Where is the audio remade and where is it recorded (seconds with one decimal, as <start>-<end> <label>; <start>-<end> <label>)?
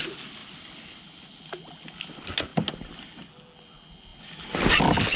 0.0-0.4 recorded; 0.4-1.3 remade; 1.3-2.5 recorded; 2.5-3.3 remade; 3.3-5.2 recorded